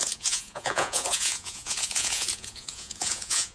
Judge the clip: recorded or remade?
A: remade